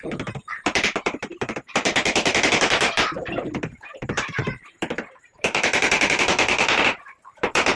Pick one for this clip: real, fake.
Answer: fake